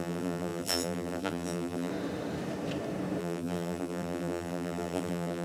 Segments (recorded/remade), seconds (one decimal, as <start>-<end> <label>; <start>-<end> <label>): 0.0-1.9 remade; 1.9-3.2 recorded; 3.2-5.4 remade